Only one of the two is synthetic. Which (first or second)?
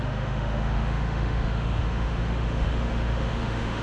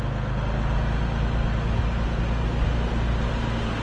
first